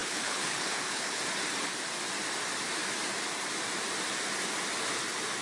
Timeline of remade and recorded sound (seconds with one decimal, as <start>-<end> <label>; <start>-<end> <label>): 0.0-1.2 remade; 1.2-5.4 recorded